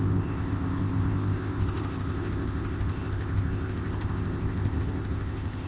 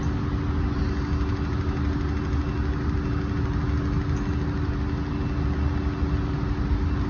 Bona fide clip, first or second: second